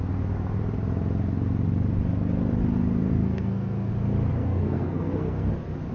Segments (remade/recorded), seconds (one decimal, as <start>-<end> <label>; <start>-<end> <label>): 0.0-3.1 recorded; 3.1-3.9 remade; 3.9-4.3 recorded; 4.3-5.5 remade; 5.5-5.9 recorded